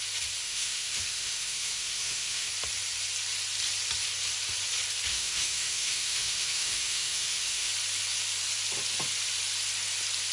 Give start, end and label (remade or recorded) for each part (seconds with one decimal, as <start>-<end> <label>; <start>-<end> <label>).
0.0-0.4 recorded; 0.4-2.5 remade; 2.5-5.1 recorded; 5.1-7.7 remade; 7.7-10.3 recorded